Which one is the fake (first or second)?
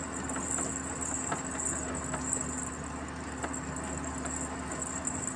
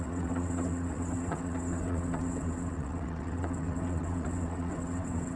second